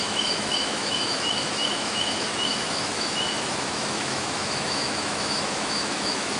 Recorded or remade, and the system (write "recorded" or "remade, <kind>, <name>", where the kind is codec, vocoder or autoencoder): remade, autoencoder, DAC-VAE